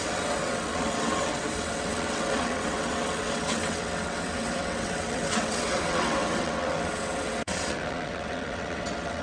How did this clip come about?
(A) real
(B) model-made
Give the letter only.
B